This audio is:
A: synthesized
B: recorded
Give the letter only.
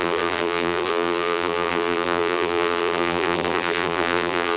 A